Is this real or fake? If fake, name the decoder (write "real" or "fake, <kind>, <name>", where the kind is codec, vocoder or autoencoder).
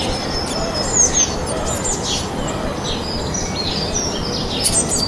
real